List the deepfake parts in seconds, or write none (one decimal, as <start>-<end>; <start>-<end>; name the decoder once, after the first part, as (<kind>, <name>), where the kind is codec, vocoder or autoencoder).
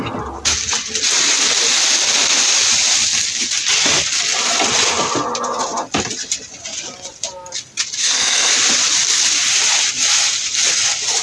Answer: 8.0-8.5 (codec, SNAC)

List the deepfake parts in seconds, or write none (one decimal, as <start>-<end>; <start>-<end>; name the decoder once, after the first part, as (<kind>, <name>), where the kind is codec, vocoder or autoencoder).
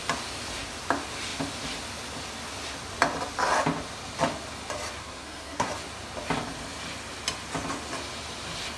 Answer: 5.0-5.7 (codec, SNAC)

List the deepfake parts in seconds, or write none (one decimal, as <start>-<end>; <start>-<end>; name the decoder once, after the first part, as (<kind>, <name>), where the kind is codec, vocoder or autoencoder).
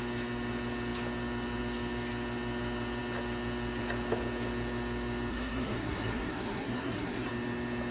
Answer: 5.3-7.3 (codec, SNAC)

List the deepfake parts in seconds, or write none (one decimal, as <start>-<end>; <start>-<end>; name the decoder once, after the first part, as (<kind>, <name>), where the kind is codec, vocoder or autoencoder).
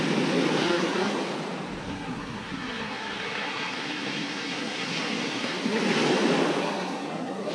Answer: 0.6-1.2 (codec, SNAC); 1.8-5.8; 6.6-7.5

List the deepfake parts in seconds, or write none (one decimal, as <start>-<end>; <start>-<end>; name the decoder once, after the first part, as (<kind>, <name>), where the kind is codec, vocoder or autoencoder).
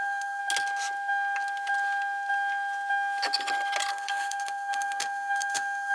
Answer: 0.0-0.4 (codec, SNAC); 3.9-5.9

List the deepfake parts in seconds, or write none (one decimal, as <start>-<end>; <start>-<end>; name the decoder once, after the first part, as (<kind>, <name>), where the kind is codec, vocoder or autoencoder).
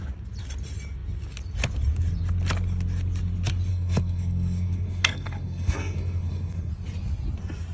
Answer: 3.7-6.7 (codec, SNAC)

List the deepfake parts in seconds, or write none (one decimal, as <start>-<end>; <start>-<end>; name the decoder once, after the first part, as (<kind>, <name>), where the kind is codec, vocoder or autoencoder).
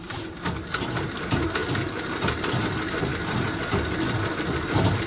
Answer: none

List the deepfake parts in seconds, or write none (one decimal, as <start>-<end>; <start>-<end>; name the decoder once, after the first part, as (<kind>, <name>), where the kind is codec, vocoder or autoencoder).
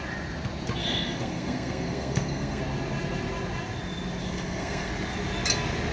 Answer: 0.8-2.6 (codec, SNAC); 4.2-4.9